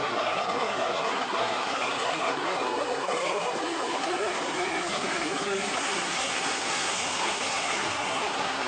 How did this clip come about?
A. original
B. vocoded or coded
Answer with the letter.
B